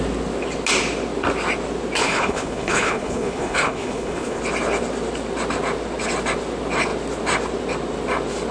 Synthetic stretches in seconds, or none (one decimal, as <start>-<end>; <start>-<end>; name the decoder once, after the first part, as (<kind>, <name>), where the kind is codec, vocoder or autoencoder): 2.0-4.4 (codec, HILCodec)